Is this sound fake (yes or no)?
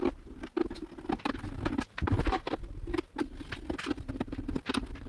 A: no